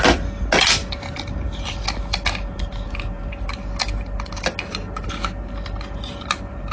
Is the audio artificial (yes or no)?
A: no